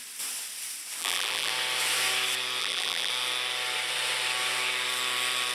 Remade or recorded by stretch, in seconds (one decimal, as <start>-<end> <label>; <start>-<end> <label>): 0.0-1.0 recorded; 1.0-1.5 remade; 1.5-2.6 recorded; 2.6-3.1 remade; 3.1-5.5 recorded